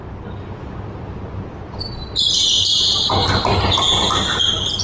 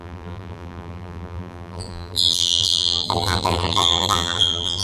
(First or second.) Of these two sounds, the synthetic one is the second